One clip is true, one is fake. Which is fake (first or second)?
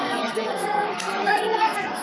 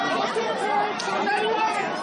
first